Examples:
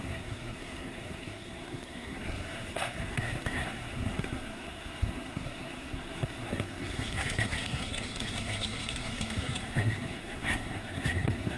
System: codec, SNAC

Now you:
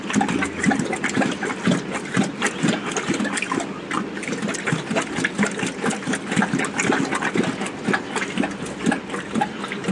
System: none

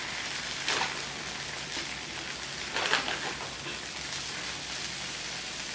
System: none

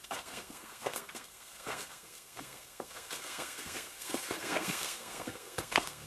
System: codec, SNAC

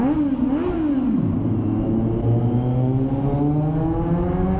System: none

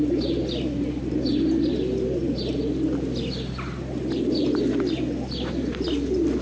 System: none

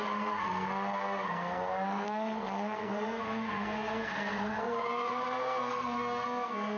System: codec, SNAC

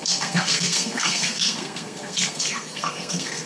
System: codec, SNAC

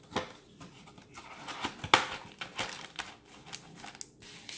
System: none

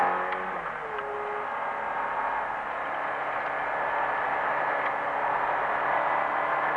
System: none